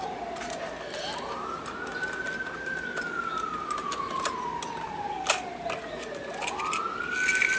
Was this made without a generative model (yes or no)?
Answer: yes